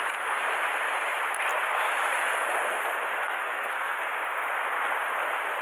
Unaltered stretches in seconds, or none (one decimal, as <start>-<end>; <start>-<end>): 0.0-3.4; 4.0-5.6